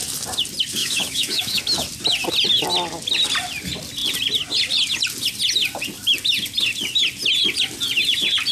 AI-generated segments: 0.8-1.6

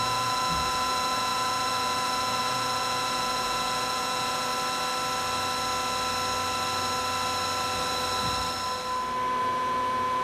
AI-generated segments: 0.0-4.5; 9.4-10.2

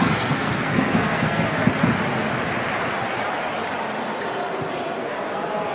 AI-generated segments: 0.0-1.6; 5.0-5.7

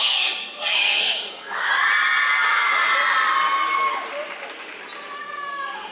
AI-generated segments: 0.0-1.7; 5.2-5.9

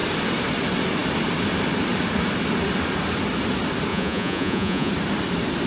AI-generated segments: 3.9-4.9